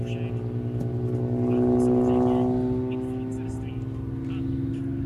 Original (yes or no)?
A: yes